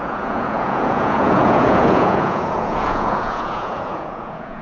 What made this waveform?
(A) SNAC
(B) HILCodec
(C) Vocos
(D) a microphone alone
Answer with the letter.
C